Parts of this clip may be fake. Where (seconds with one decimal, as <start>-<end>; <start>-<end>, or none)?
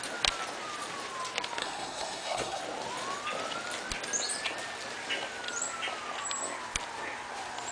1.6-2.6